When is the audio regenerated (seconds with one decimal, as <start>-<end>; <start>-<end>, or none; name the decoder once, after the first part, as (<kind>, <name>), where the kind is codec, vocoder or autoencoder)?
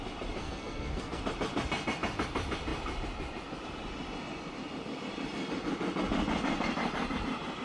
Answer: 0.4-1.2 (codec, SNAC)